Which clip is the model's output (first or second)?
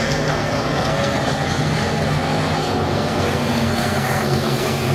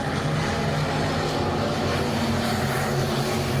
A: first